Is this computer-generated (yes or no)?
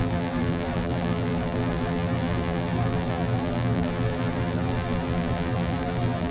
yes